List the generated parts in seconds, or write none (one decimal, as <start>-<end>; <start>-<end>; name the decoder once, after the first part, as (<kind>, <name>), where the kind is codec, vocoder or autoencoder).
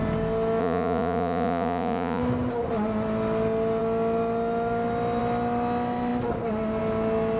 0.6-2.2 (vocoder, Vocos)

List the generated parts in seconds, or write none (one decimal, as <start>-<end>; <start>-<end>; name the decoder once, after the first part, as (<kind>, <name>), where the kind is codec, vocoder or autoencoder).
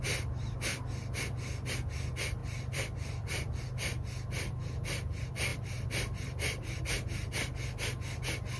2.4-3.6 (vocoder, BigVGAN v2); 5.5-6.8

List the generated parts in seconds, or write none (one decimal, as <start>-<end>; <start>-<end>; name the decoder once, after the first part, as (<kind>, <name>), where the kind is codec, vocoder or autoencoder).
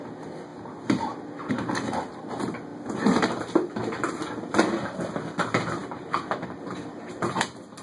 5.8-7.1 (vocoder, BigVGAN v2)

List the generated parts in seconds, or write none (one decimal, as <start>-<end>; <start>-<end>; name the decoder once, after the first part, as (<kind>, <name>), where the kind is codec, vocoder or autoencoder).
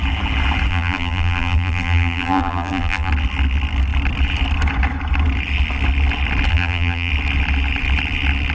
0.7-3.1 (vocoder, BigVGAN v2); 6.5-7.1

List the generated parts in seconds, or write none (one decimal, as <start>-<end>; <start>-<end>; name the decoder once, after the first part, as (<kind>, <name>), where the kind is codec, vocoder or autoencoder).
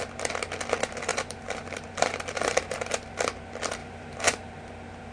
1.1-3.1 (vocoder, BigVGAN v2); 3.8-4.5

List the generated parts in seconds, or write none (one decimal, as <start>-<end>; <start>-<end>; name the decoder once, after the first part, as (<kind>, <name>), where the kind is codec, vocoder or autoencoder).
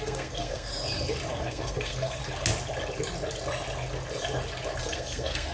0.0-0.7 (codec, SNAC); 1.3-2.2; 4.8-5.5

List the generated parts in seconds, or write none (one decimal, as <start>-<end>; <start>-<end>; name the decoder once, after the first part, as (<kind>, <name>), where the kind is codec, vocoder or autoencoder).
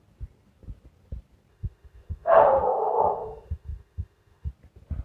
1.5-4.5 (autoencoder, DAC-VAE)